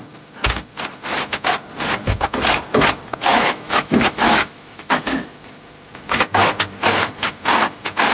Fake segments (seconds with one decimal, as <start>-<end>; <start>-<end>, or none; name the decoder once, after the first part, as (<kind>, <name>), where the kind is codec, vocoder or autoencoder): 3.3-5.0 (autoencoder, DAC-VAE)